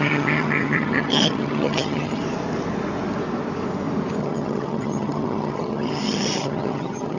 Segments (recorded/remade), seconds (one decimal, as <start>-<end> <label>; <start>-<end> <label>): 0.0-2.2 remade; 2.2-4.2 recorded; 4.2-7.2 remade